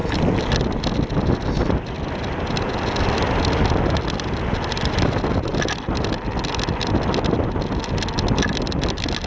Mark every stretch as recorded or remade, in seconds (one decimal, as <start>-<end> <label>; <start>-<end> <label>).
0.0-9.3 recorded